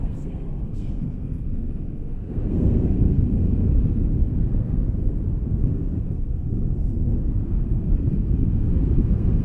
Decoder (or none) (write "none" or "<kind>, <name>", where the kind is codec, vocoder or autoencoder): codec, SNAC